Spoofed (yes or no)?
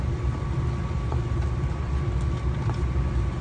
no